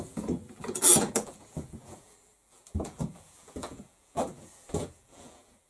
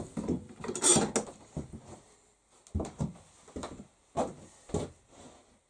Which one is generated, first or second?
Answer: first